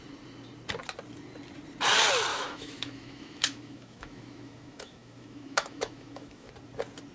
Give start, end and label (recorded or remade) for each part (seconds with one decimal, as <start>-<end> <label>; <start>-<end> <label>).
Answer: 0.0-2.3 recorded; 2.3-6.5 remade; 6.5-7.1 recorded